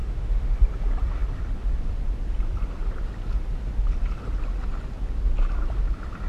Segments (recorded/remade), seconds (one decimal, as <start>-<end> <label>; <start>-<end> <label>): 0.0-0.6 remade; 0.6-6.3 recorded